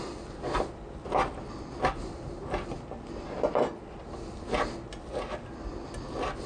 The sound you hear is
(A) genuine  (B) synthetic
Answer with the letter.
A